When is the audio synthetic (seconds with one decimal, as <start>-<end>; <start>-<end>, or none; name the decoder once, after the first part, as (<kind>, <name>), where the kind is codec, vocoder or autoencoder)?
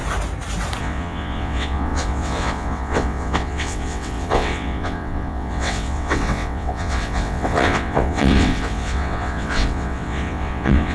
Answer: 0.8-10.9 (vocoder, WaveNeXt)